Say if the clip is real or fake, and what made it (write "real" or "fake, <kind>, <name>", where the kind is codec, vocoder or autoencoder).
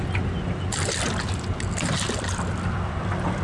real